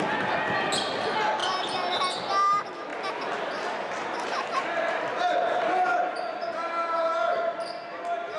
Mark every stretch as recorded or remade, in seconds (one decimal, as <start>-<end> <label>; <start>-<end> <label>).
0.0-8.4 recorded